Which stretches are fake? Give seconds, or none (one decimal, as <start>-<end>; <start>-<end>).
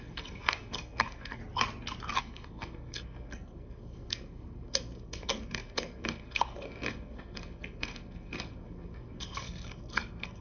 0.0-1.4; 2.2-10.4